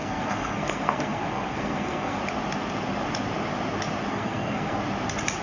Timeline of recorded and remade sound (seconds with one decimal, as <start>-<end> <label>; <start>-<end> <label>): 0.0-2.2 remade; 2.2-4.1 recorded; 4.1-4.8 remade; 4.8-5.4 recorded